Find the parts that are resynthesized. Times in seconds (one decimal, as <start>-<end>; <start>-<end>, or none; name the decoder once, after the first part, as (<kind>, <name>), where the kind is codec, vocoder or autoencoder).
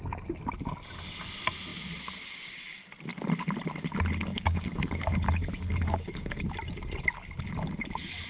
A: 4.3-6.4 (codec, DAC)